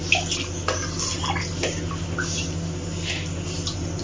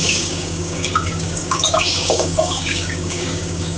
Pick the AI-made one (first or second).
second